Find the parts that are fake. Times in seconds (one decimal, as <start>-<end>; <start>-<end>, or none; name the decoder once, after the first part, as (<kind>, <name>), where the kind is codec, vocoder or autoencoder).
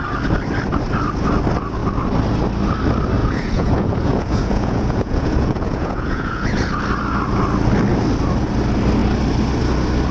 3.2-6.8 (vocoder, Vocos)